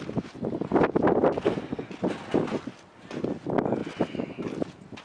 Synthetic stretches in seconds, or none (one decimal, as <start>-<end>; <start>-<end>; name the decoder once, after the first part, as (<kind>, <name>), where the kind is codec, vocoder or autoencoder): none